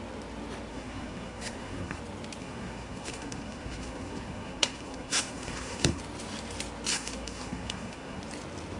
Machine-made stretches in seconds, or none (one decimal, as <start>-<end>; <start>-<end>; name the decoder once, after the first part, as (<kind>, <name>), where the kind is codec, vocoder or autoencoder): 0.7-2.0 (codec, SNAC); 2.4-6.0; 6.9-8.2